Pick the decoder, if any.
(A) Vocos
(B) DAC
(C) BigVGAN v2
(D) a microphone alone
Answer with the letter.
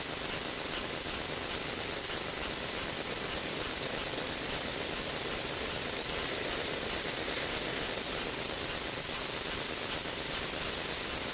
D